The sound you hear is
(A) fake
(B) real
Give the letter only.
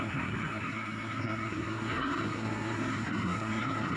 A